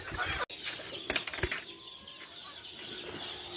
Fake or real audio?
real